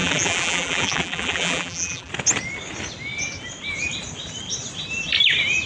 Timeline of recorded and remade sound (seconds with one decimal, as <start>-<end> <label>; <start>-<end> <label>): 0.0-2.1 remade; 2.1-5.7 recorded